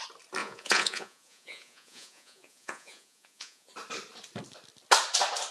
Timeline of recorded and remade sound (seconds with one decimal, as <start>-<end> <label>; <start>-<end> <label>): 0.0-0.4 recorded; 0.4-3.7 remade; 3.7-5.5 recorded